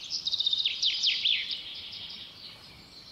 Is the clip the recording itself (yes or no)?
no